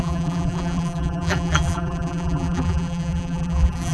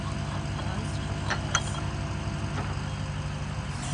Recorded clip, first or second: second